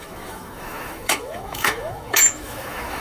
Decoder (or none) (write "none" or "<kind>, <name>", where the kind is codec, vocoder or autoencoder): autoencoder, DAC-VAE